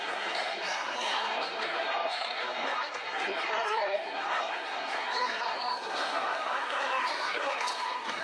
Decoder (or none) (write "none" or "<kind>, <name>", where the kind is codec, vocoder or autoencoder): codec, SNAC